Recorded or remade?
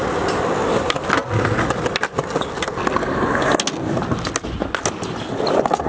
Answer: recorded